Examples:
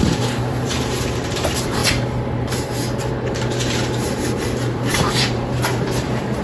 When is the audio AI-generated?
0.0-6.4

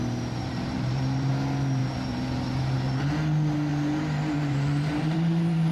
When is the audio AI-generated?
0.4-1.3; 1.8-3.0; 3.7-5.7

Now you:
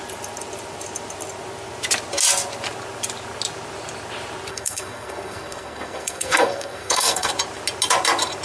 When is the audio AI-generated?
4.5-7.3